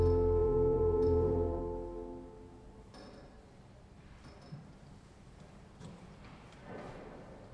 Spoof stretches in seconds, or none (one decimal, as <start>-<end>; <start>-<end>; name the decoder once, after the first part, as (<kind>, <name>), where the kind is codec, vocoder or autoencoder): 0.4-1.6 (vocoder, Vocos)

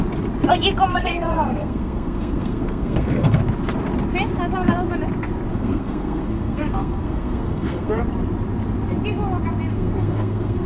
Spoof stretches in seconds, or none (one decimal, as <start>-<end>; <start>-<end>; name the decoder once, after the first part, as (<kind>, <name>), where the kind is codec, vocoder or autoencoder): 0.9-3.4 (codec, SNAC); 5.5-7.9; 9.7-10.7

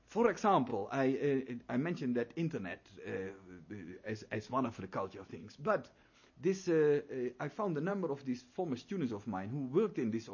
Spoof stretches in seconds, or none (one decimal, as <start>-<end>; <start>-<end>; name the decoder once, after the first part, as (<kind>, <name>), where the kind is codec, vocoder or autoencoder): 3.9-4.8 (codec, HILCodec); 5.4-6.3

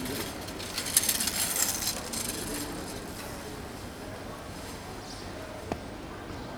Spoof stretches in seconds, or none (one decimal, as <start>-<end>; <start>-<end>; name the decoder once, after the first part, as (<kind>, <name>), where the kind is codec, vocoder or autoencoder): none

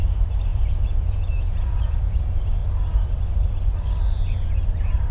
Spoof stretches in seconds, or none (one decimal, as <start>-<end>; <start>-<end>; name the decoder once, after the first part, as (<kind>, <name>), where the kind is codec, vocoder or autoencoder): 0.5-2.2 (vocoder, Vocos)

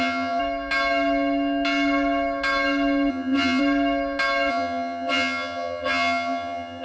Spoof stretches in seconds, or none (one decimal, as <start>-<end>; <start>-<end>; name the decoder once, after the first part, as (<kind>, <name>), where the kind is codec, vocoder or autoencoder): 0.0-0.4 (vocoder, HiFi-GAN); 3.1-3.6; 4.5-6.8